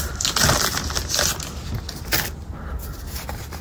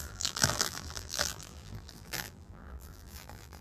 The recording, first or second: first